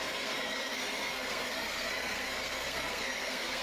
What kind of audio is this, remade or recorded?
remade